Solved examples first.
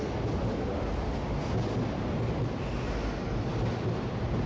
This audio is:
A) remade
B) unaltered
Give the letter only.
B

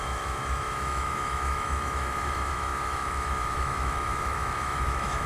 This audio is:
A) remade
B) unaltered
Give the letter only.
A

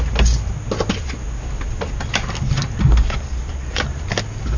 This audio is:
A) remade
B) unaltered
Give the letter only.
B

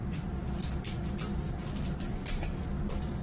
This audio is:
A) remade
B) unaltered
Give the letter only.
A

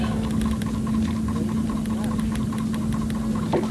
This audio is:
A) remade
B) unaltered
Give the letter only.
B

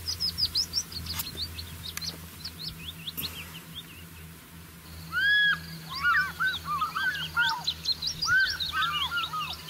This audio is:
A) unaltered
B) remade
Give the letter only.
A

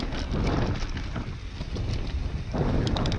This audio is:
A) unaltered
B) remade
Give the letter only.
A